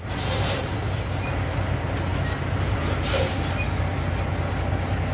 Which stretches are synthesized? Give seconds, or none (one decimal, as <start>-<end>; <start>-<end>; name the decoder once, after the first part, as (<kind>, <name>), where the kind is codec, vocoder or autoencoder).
none